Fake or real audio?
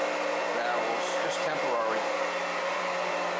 real